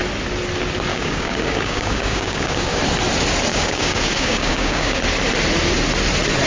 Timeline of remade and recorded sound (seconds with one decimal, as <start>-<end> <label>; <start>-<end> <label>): 0.0-0.9 recorded; 0.9-2.8 remade; 2.8-3.5 recorded; 3.5-5.0 remade; 5.0-6.5 recorded

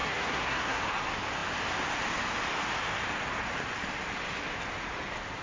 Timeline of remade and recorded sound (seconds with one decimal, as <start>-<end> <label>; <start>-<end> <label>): 0.0-0.8 remade; 0.8-5.4 recorded

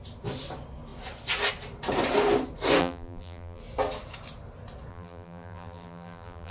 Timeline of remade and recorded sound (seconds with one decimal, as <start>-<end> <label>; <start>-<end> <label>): 0.0-2.8 recorded; 2.8-3.6 remade; 3.6-4.9 recorded; 4.9-6.5 remade